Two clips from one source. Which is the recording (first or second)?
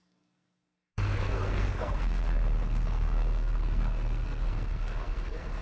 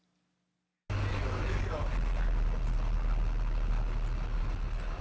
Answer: second